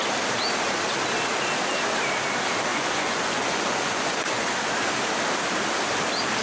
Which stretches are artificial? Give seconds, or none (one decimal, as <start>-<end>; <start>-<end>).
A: 2.7-4.5